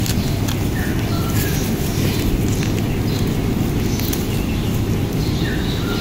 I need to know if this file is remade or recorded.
recorded